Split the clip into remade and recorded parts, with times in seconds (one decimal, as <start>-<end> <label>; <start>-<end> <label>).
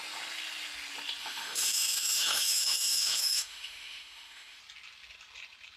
0.0-1.2 recorded; 1.2-4.6 remade; 4.6-5.8 recorded